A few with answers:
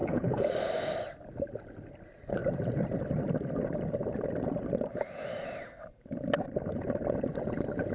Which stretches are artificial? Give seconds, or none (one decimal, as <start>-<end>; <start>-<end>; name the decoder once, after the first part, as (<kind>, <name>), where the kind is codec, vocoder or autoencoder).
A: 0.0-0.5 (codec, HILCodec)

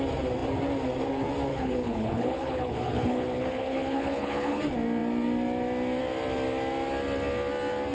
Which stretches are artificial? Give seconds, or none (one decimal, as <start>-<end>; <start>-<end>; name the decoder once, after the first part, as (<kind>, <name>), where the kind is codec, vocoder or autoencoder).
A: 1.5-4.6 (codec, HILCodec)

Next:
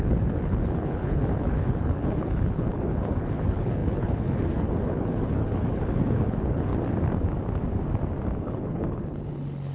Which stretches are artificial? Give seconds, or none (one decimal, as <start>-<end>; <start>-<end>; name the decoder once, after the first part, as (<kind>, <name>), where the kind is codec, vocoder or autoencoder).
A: 0.0-6.7 (codec, HILCodec); 8.4-9.7

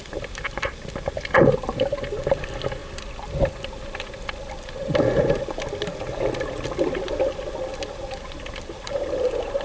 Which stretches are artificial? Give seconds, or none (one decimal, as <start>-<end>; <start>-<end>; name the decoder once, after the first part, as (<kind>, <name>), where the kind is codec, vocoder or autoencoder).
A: none